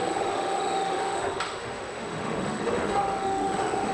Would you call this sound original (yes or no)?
no